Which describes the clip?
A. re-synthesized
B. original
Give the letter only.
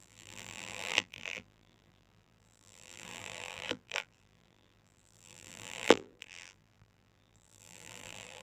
A